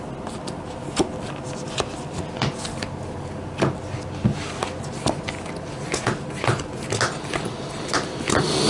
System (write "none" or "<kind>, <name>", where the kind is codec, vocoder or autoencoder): none